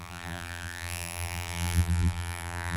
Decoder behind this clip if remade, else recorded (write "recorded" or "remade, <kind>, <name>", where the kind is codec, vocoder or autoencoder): remade, vocoder, BigVGAN v2